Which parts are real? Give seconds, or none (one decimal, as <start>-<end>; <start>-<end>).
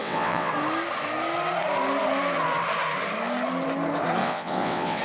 0.5-4.2